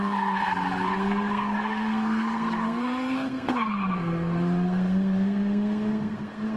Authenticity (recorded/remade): remade